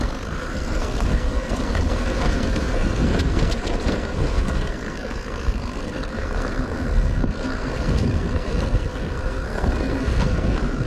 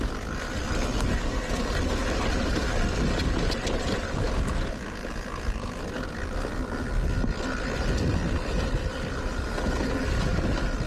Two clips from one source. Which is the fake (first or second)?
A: first